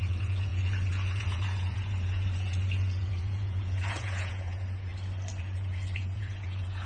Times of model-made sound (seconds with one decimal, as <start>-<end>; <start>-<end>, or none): 0.0-4.9; 5.4-6.9

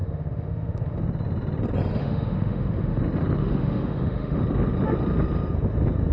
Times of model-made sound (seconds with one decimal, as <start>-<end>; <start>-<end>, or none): 0.0-1.0; 2.0-3.0; 3.4-4.4

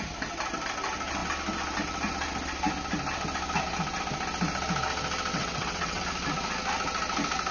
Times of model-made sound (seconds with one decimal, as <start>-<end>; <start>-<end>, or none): 5.3-6.0